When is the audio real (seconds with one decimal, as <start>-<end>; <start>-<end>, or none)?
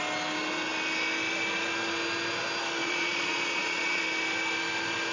0.0-2.8; 4.0-5.1